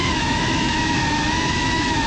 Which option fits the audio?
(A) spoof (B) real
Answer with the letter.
A